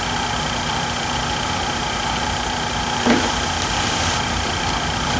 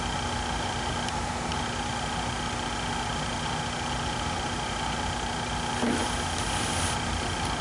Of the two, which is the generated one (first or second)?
first